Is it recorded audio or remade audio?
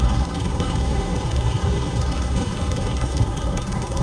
remade